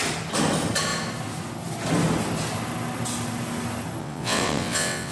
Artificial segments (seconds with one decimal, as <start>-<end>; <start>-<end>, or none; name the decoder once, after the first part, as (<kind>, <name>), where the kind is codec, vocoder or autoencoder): 4.0-5.1 (vocoder, WaveNeXt)